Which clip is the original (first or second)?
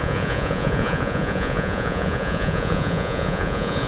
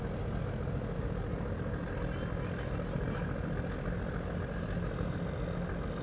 second